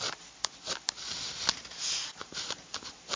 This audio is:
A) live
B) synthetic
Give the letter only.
A